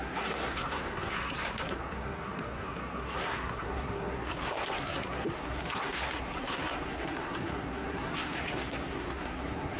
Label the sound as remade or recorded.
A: remade